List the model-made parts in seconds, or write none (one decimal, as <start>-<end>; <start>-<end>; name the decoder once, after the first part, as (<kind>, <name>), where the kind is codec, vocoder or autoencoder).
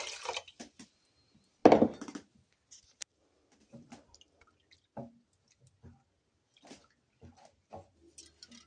none